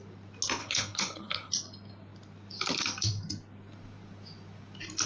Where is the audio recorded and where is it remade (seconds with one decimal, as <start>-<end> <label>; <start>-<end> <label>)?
0.0-0.6 recorded; 0.6-1.5 remade; 1.5-5.1 recorded